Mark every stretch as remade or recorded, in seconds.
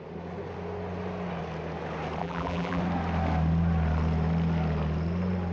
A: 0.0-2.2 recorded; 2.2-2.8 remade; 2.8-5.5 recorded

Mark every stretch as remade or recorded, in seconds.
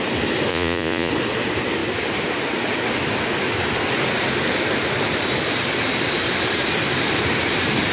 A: 0.0-0.5 recorded; 0.5-1.1 remade; 1.1-7.9 recorded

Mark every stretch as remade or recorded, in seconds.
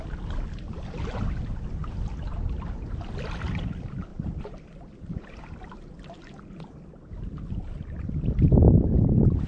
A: 0.0-4.1 recorded; 4.1-8.6 remade; 8.6-9.5 recorded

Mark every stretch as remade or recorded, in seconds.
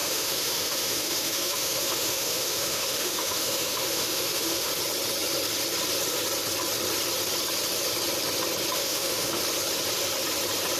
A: 0.0-4.7 remade; 4.7-8.8 recorded; 8.8-9.4 remade; 9.4-10.8 recorded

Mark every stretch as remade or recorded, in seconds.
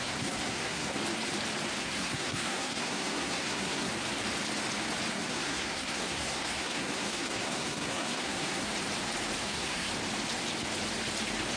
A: 0.0-1.0 remade; 1.0-1.8 recorded; 1.8-3.9 remade; 3.9-5.1 recorded; 5.1-8.7 remade; 8.7-9.4 recorded; 9.4-9.9 remade; 9.9-11.6 recorded